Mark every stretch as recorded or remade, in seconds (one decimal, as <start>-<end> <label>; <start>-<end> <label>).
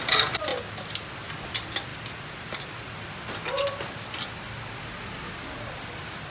0.0-0.5 remade; 0.5-1.3 recorded; 1.3-1.9 remade; 1.9-5.7 recorded; 5.7-6.3 remade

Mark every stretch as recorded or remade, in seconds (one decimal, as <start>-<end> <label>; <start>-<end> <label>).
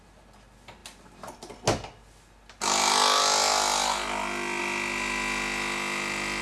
0.0-6.4 recorded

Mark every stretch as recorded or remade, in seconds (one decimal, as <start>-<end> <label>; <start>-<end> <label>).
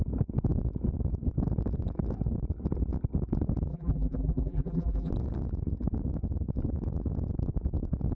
0.0-3.7 recorded; 3.7-5.1 remade; 5.1-8.1 recorded